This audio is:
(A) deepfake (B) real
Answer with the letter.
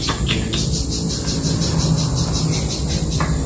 B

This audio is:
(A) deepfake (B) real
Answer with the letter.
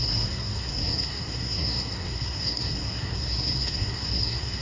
A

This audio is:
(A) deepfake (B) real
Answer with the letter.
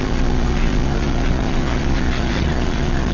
A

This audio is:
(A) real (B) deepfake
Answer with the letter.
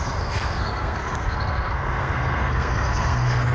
B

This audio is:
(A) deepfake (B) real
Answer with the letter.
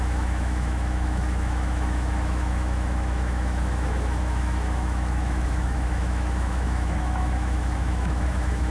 A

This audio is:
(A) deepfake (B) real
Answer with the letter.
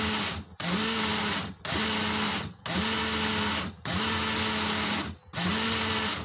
B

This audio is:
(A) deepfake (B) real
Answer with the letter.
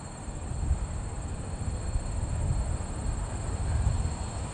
B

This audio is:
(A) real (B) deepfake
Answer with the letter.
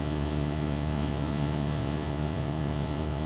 B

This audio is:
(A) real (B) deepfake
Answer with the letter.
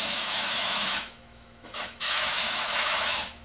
B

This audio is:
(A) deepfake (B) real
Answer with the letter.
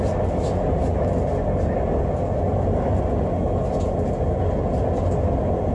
B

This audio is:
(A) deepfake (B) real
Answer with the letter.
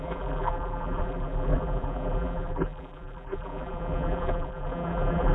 A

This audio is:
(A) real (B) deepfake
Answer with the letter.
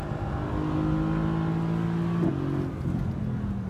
A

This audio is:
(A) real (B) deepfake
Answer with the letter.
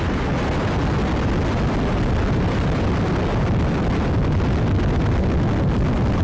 A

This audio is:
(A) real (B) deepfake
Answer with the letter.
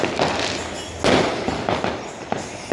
A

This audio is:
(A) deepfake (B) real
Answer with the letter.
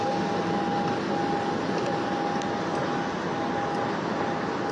B